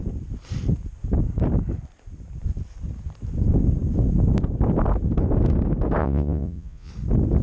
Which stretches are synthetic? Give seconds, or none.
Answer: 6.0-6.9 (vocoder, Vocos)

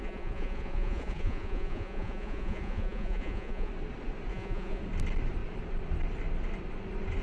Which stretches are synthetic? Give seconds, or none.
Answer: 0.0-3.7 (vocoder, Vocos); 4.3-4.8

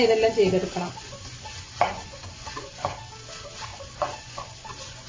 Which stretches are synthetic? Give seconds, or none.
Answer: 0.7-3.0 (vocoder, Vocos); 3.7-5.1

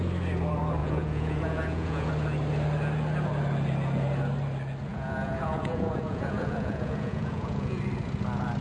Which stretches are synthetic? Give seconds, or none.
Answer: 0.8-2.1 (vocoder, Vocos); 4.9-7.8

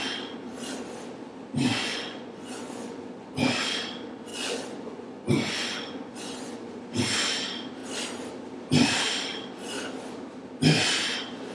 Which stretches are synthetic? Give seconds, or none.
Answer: 1.7-3.3 (vocoder, Vocos); 4.3-6.8

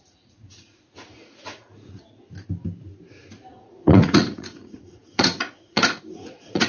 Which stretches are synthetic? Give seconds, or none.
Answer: 0.0-2.2 (vocoder, Vocos); 3.5-6.7

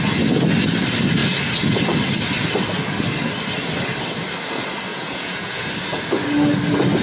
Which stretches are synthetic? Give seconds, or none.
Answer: 4.9-5.7 (vocoder, Vocos)